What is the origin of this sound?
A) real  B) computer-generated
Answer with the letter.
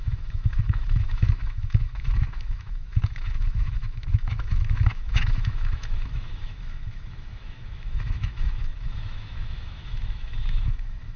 B